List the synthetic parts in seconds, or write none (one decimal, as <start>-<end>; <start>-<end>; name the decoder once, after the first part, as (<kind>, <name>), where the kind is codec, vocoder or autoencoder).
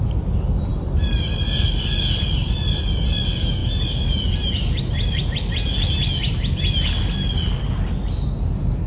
none